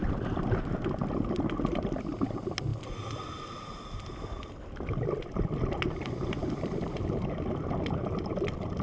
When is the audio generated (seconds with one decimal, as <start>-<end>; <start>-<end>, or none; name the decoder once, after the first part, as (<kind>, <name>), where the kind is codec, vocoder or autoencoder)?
none